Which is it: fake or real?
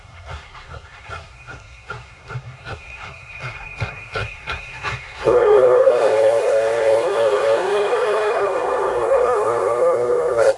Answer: fake